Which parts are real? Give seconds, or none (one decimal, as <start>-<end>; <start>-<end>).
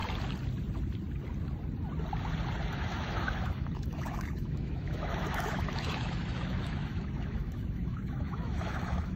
0.0-2.7